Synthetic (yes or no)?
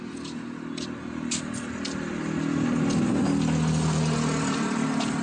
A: no